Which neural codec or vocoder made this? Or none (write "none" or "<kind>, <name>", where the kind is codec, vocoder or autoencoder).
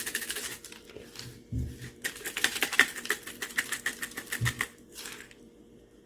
none